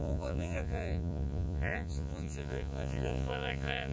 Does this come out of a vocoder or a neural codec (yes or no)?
yes